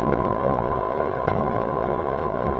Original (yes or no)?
no